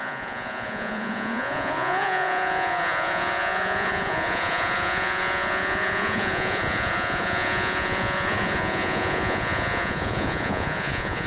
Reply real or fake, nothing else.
fake